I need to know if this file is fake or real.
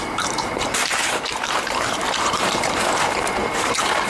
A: fake